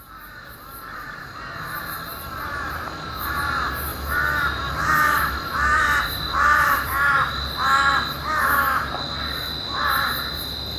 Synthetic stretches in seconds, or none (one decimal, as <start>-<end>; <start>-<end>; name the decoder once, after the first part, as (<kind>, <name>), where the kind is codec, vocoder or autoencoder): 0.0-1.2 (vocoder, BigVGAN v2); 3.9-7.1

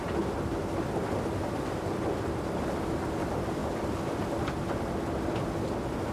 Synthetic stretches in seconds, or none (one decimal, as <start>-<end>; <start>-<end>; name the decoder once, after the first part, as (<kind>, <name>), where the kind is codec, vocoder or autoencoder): none

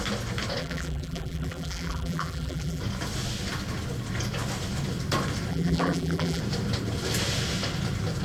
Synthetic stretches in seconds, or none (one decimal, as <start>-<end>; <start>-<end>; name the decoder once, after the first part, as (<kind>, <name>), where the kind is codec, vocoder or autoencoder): 0.6-2.8 (vocoder, BigVGAN v2); 5.5-6.4

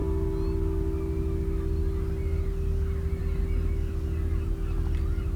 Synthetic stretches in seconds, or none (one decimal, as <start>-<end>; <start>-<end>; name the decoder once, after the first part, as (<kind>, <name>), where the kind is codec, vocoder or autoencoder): none

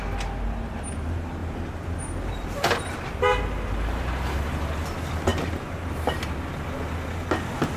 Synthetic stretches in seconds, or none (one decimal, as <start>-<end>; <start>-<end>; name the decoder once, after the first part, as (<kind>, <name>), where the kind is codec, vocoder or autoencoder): 1.4-3.1 (vocoder, BigVGAN v2); 5.3-5.9